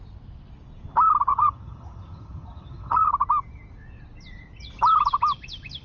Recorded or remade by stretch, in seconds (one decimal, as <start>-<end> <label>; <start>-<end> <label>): 0.0-1.3 recorded; 1.3-3.1 remade; 3.1-5.8 recorded